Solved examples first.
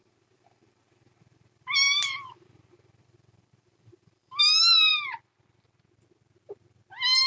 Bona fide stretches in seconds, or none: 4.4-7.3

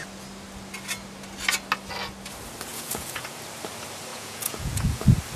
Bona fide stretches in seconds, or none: 0.0-2.7; 3.4-4.1; 5.0-5.4

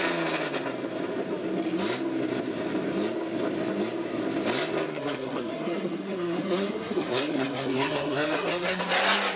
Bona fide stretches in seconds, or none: 0.0-4.9; 8.8-9.4

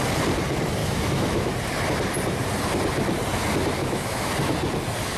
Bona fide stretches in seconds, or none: 0.0-0.8; 1.5-3.8; 4.3-5.2

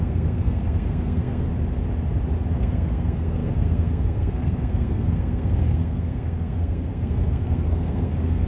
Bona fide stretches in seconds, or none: 1.5-2.6